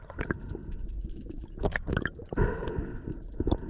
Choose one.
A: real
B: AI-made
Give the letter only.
A